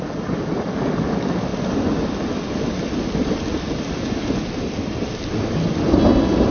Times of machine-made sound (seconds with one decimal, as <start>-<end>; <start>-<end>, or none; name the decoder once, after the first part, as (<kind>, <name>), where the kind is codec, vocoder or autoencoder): none